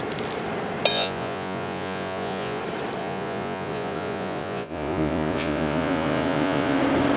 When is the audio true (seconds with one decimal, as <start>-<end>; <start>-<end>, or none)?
0.0-0.9; 2.6-3.0; 6.8-7.2